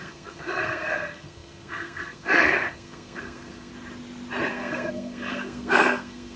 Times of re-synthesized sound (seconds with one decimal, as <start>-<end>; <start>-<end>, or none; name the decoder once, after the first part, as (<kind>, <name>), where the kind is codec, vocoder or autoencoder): 0.0-3.7 (codec, SNAC); 4.5-6.4